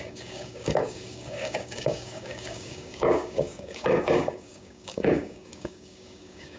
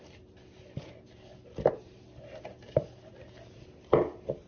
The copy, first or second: first